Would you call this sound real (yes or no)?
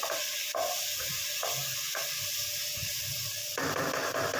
yes